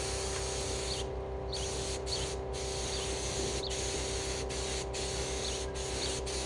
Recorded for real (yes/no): yes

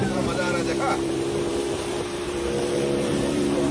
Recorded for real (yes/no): no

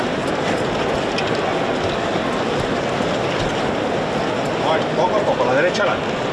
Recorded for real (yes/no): yes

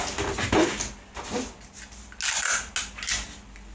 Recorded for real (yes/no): yes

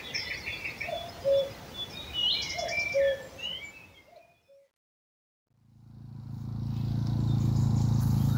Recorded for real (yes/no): yes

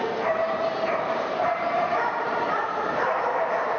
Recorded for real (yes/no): no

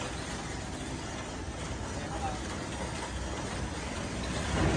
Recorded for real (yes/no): yes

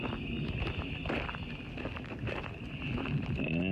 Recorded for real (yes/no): yes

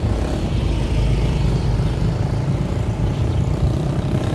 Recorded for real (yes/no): no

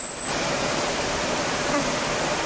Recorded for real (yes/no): yes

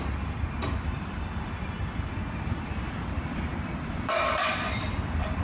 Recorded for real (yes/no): no